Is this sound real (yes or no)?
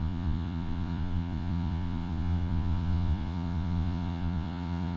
no